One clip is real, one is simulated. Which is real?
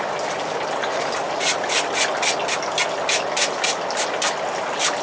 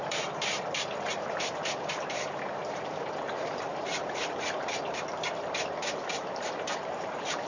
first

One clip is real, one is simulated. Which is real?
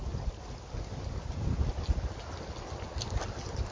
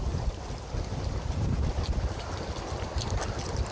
first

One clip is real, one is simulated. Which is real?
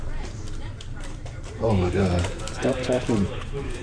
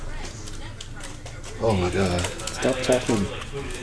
second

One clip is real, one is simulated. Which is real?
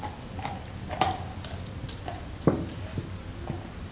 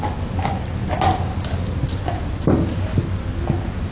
second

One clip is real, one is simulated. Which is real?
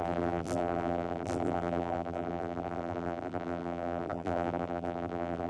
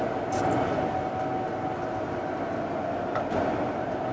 second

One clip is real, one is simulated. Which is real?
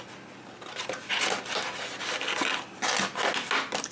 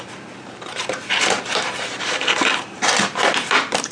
first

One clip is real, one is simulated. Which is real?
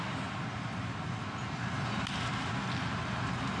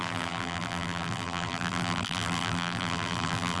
first